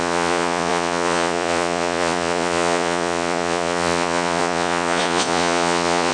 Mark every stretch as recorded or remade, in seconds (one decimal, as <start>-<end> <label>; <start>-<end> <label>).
0.0-6.1 remade